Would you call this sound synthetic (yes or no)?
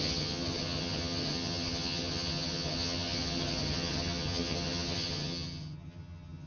yes